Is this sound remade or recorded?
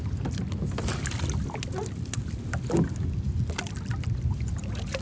recorded